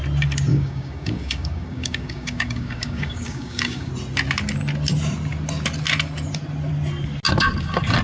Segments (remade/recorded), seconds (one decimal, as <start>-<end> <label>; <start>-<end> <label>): 0.0-0.5 recorded; 0.5-3.9 remade; 3.9-8.0 recorded